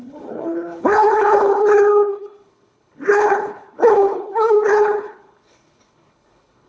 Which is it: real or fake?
fake